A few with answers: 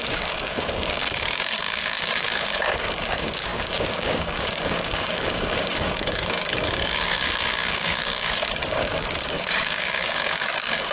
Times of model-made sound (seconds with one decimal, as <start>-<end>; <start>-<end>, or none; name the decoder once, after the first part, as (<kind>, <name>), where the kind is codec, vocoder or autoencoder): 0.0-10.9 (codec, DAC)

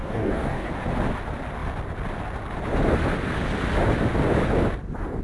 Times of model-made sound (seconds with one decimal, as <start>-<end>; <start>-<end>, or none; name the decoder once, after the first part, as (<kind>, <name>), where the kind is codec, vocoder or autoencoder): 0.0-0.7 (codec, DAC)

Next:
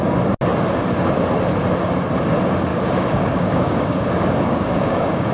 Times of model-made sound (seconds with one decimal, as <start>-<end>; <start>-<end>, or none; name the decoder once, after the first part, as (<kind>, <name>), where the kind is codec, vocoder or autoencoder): 2.7-5.3 (codec, DAC)

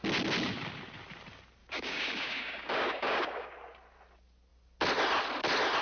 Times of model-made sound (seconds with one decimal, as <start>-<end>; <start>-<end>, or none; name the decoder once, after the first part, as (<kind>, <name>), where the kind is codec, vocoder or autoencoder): 1.6-3.5 (codec, DAC)

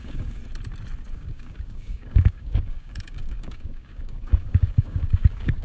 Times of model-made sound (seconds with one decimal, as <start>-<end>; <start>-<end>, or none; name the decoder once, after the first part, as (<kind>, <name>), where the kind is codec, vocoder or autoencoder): 0.0-0.4 (codec, DAC); 1.1-5.6